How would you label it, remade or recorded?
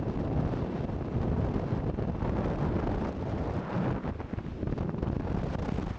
recorded